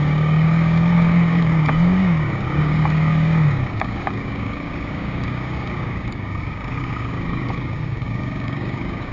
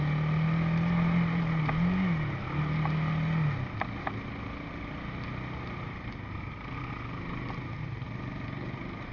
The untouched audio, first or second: second